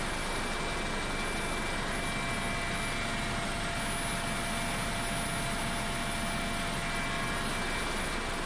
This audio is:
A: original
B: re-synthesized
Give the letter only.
A